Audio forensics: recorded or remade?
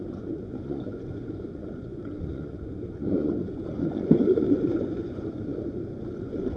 remade